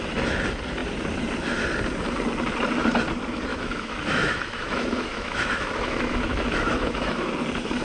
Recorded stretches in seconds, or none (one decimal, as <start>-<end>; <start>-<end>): 0.0-3.5; 7.3-7.8